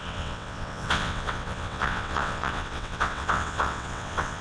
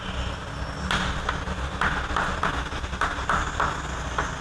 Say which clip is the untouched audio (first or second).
second